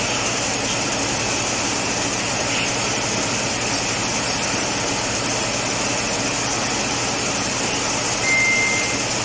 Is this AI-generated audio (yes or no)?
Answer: no